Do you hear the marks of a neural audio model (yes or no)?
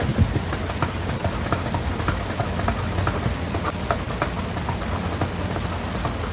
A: no